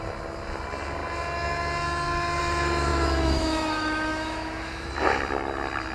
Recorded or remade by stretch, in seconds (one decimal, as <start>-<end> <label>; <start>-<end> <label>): 0.0-2.9 recorded; 2.9-4.9 remade; 4.9-5.9 recorded